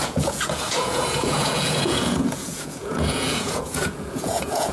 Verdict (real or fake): fake